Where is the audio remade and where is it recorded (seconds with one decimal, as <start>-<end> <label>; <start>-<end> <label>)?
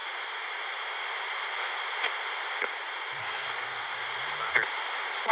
0.0-3.2 recorded; 3.2-3.9 remade; 3.9-5.3 recorded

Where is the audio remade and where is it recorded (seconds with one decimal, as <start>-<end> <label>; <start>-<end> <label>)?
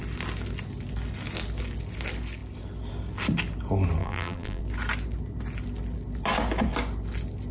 0.0-4.0 recorded; 4.0-4.6 remade; 4.6-7.5 recorded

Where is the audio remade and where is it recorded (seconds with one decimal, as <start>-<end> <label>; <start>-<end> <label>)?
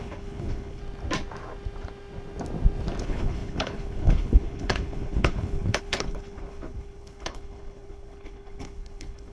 0.0-0.8 remade; 0.8-3.0 recorded; 3.0-9.3 remade